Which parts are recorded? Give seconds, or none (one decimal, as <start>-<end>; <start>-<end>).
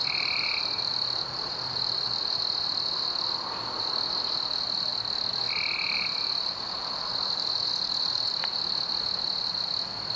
0.0-10.2